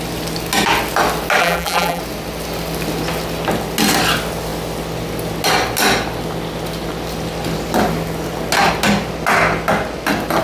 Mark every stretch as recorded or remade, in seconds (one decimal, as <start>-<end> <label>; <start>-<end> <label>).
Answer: 0.0-1.4 recorded; 1.4-2.0 remade; 2.0-10.4 recorded